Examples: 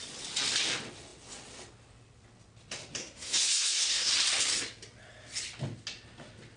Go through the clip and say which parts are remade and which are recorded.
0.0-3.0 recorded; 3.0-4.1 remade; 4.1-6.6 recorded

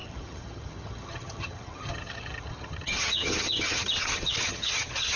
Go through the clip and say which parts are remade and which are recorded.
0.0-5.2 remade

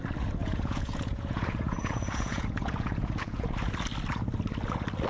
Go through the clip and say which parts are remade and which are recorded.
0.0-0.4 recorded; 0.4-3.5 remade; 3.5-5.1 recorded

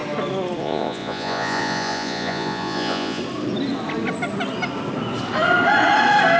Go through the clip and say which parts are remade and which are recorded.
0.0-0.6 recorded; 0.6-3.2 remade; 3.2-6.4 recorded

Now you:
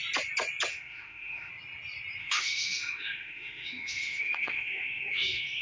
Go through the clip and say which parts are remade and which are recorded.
0.0-0.7 recorded; 0.7-1.5 remade; 1.5-2.2 recorded; 2.2-5.6 remade

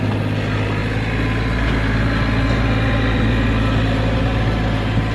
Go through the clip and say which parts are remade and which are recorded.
0.0-5.1 recorded

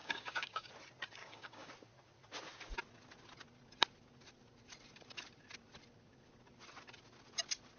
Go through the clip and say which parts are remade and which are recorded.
0.0-0.7 remade; 0.7-1.2 recorded; 1.2-1.7 remade; 1.7-7.8 recorded